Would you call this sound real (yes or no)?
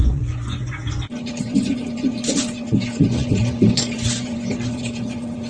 no